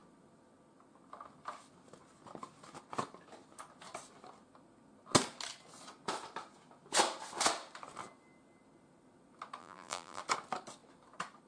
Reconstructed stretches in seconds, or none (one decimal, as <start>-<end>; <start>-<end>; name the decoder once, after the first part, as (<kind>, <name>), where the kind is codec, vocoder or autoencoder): 9.6-10.2 (vocoder, BigVGAN v2)